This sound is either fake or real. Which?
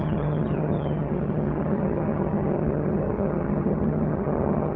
fake